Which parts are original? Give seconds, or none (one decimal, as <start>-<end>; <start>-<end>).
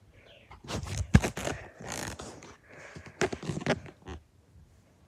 0.0-5.1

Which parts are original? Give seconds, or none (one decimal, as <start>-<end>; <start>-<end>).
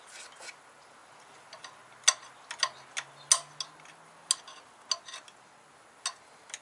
0.0-6.6